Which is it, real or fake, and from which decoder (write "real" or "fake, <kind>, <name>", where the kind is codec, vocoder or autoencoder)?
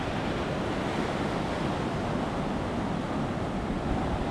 real